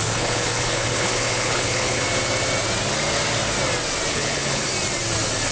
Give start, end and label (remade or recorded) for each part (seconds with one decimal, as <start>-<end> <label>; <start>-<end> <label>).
0.0-2.0 remade; 2.0-4.1 recorded; 4.1-4.7 remade; 4.7-5.5 recorded